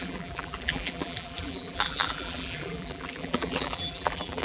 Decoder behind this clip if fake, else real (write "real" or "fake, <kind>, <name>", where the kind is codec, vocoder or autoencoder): fake, vocoder, BigVGAN v2